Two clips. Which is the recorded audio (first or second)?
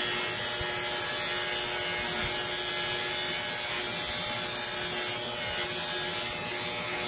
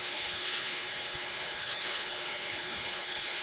first